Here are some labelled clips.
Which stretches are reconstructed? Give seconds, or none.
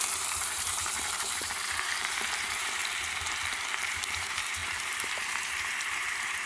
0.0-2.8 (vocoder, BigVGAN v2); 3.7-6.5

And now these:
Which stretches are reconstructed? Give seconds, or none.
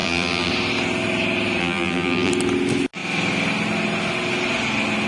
0.0-0.5 (vocoder, BigVGAN v2); 1.6-2.3